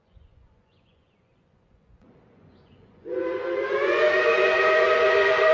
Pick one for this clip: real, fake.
fake